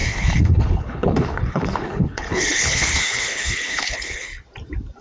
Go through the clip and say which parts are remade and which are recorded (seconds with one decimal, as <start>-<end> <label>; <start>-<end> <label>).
0.0-4.3 remade; 4.3-5.0 recorded